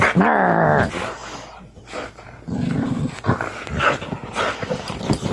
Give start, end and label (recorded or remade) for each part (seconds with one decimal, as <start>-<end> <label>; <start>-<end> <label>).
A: 0.0-5.3 recorded